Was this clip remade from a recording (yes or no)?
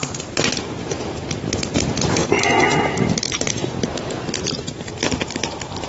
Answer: yes